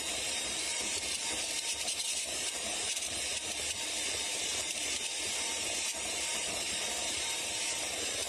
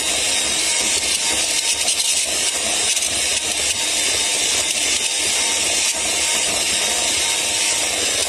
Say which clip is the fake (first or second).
first